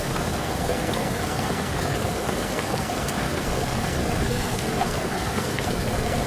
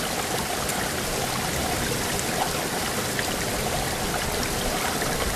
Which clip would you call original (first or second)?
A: second